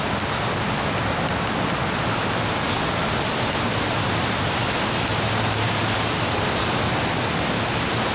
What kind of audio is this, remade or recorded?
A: recorded